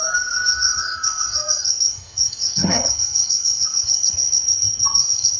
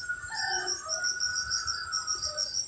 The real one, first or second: second